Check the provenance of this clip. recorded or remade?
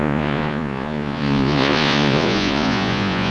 remade